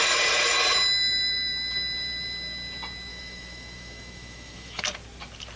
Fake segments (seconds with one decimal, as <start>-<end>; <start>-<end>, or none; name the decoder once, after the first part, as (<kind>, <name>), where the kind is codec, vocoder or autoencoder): 3.1-4.8 (autoencoder, DAC-VAE)